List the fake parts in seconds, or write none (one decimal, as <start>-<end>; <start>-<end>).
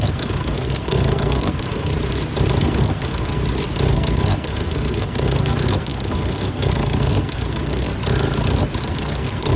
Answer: 0.0-1.9; 2.6-3.4; 3.9-7.9; 8.8-9.6